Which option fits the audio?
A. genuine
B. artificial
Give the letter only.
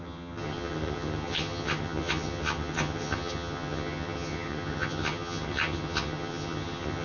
B